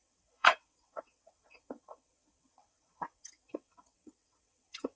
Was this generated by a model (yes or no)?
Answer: yes